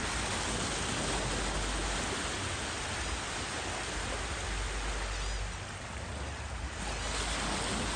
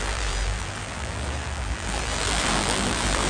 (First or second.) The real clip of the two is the first